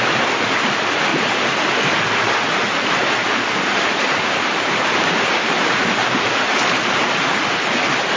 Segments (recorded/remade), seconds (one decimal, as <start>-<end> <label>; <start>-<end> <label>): 0.0-1.1 recorded; 1.1-1.8 remade; 1.8-2.5 recorded; 2.5-7.1 remade; 7.1-8.2 recorded